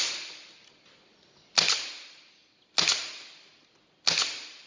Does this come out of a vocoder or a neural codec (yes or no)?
no